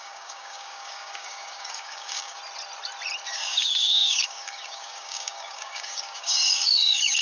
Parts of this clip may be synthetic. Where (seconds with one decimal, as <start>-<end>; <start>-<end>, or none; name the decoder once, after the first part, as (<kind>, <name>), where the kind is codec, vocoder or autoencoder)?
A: 0.0-2.4 (codec, DAC); 3.3-7.2